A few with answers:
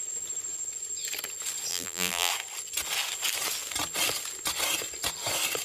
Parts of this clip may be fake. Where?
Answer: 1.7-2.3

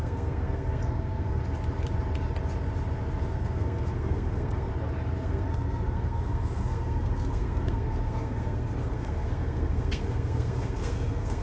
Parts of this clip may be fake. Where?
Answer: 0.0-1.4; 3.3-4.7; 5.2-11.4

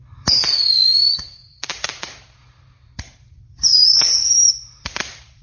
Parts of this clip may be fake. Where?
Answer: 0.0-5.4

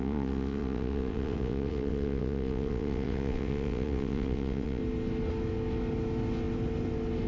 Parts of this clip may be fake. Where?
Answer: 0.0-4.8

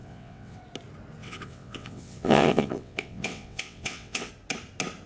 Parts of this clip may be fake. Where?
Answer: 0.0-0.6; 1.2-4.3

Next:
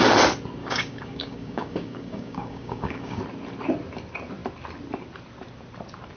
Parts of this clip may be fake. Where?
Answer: 0.6-3.2

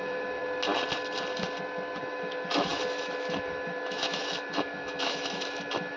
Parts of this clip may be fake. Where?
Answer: 0.0-0.4; 2.0-6.0